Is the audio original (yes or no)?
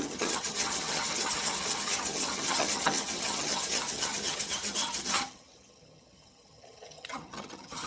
no